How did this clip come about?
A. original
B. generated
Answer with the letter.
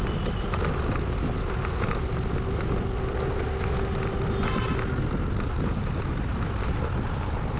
A